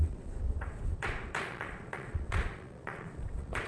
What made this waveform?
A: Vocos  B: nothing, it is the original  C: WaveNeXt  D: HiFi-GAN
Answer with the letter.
A